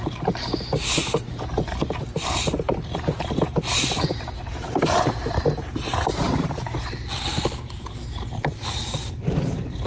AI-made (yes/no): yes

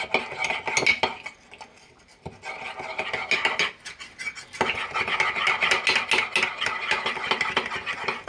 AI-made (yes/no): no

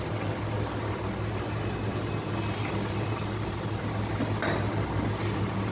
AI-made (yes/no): no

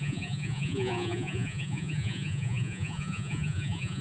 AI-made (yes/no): yes